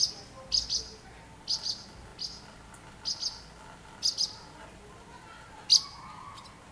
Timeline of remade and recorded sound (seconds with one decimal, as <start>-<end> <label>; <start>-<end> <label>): 0.0-6.7 recorded